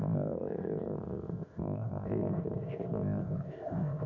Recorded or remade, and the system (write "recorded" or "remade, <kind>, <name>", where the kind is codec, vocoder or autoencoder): remade, codec, ZipCodec